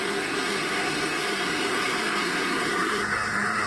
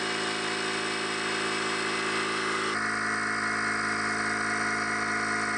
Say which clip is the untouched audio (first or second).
second